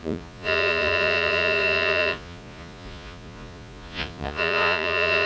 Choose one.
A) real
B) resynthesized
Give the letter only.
B